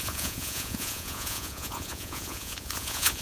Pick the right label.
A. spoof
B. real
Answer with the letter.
A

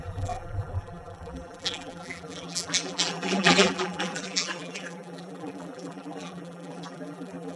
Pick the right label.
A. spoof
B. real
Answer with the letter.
A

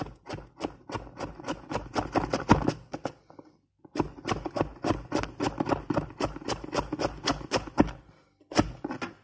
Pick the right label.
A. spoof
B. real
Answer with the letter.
B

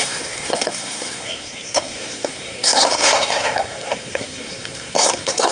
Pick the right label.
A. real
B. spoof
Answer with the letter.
B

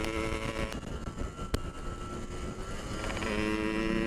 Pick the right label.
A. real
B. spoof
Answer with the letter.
A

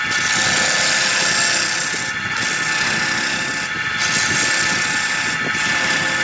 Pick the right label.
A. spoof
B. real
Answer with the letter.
B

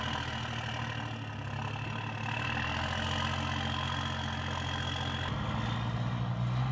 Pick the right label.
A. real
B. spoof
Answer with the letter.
A